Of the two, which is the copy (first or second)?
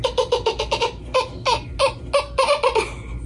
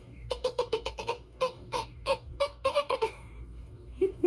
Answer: second